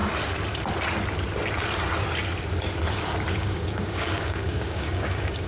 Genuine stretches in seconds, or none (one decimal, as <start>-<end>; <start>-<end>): 0.0-3.3